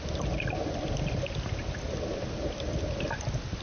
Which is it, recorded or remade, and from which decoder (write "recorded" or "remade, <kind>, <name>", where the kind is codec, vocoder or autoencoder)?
recorded